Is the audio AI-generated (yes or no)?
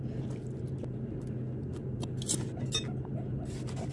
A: no